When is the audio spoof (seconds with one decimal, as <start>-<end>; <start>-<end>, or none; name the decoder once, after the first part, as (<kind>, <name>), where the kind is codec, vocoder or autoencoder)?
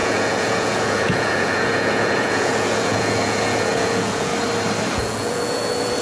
0.0-4.3 (vocoder, Vocos); 4.9-6.0